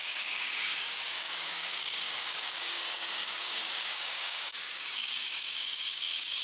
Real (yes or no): no